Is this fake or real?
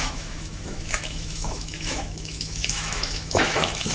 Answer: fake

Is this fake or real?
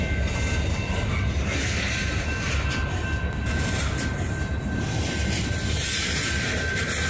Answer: real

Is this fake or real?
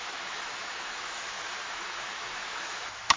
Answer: fake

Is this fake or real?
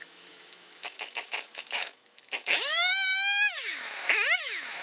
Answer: fake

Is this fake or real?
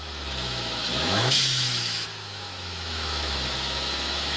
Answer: fake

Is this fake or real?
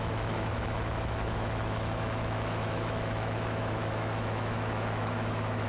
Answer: fake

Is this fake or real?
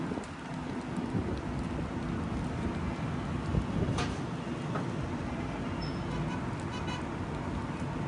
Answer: real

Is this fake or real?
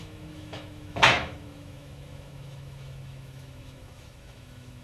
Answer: fake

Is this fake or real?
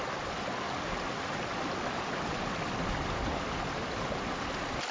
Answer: real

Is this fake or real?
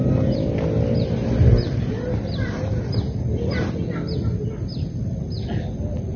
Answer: real